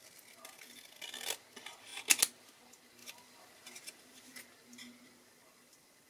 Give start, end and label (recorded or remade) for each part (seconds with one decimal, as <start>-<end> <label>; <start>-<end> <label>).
0.0-6.1 recorded